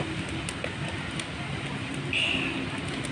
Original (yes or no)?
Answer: yes